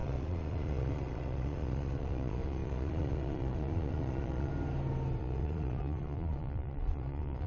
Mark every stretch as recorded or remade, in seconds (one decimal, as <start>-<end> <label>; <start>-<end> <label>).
0.0-4.5 remade; 4.5-5.2 recorded; 5.2-7.5 remade